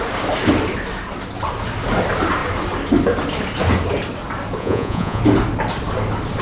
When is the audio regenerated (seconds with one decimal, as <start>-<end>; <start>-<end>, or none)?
4.6-5.2